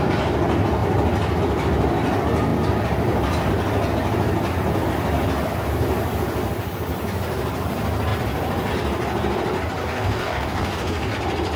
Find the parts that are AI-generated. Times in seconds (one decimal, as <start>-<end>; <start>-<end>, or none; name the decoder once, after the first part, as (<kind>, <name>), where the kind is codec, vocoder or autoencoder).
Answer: 9.8-11.1 (codec, DAC)